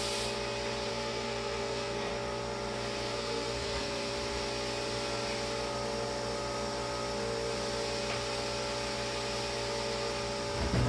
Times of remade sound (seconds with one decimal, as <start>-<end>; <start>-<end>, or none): 0.9-2.1; 3.1-4.1